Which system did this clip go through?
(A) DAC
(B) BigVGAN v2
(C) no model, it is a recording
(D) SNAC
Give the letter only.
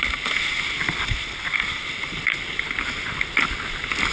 C